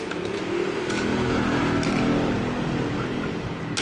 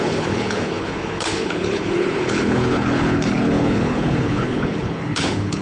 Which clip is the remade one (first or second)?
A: second